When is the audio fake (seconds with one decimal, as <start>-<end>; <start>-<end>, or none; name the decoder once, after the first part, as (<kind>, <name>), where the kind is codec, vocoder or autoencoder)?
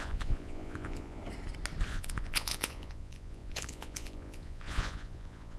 0.0-1.2 (vocoder, Vocos); 1.9-5.6